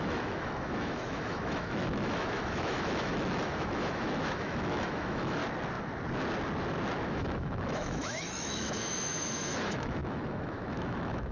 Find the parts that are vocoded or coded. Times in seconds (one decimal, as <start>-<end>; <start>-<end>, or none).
0.0-5.4; 7.1-11.3